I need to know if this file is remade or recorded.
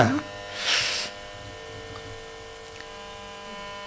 recorded